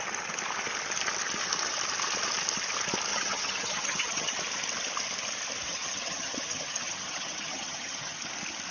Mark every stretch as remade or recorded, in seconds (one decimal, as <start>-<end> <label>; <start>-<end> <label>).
0.0-3.1 recorded; 3.1-4.4 remade; 4.4-5.7 recorded; 5.7-8.2 remade; 8.2-8.7 recorded